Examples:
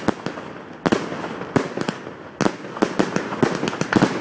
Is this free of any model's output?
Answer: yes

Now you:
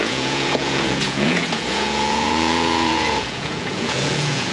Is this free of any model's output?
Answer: no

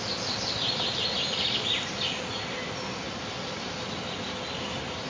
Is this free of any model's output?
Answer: yes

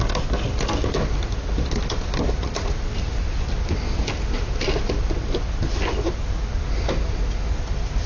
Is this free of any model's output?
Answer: yes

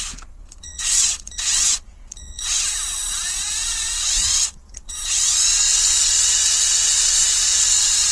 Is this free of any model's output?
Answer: no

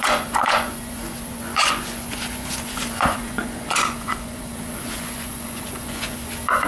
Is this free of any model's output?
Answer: no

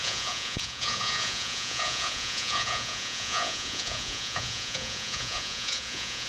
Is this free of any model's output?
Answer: no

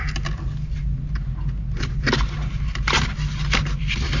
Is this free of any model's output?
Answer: yes